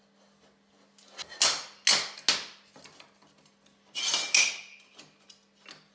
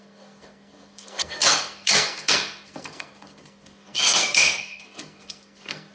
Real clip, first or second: first